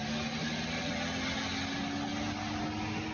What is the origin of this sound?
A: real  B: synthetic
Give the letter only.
A